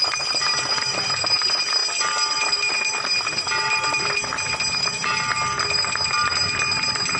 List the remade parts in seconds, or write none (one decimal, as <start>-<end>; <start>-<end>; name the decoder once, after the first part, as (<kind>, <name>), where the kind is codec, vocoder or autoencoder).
0.0-1.8 (vocoder, BigVGAN v2); 5.2-7.2